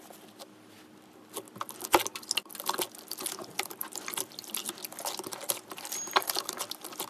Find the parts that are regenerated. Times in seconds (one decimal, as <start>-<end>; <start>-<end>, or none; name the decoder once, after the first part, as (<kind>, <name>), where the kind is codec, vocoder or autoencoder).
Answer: none